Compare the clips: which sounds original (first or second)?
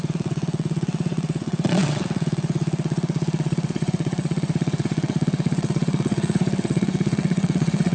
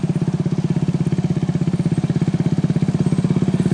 second